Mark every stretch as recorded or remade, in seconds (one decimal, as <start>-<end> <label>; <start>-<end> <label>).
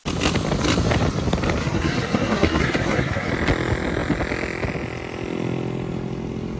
0.0-1.6 recorded; 1.6-3.3 remade; 3.3-6.6 recorded